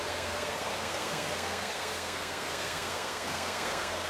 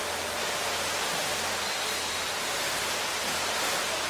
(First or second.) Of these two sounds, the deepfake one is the first